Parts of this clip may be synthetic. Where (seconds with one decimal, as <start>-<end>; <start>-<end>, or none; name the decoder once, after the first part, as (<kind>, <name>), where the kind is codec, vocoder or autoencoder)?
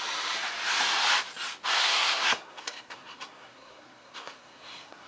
1.8-5.1 (codec, SNAC)